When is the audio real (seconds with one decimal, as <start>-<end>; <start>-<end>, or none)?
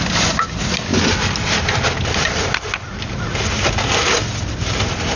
0.0-5.2